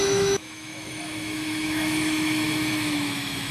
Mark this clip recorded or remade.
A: remade